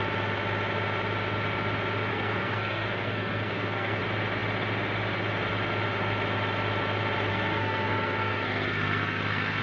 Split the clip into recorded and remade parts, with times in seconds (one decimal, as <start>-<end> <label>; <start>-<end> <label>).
0.0-2.1 recorded; 2.1-4.0 remade; 4.0-7.3 recorded; 7.3-9.6 remade